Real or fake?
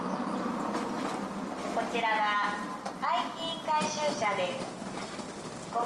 real